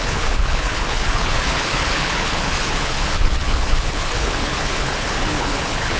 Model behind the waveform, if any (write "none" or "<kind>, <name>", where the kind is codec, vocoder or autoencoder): codec, HILCodec